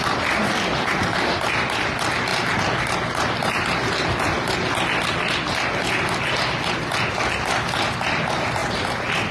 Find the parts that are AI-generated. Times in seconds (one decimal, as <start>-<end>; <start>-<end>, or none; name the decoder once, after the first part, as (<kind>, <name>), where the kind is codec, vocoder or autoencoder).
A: none